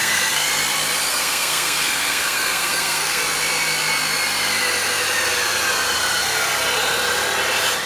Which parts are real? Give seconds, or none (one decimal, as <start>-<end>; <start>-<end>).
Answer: 0.5-1.1; 3.2-7.9